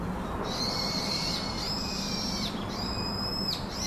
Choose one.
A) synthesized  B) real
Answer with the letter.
A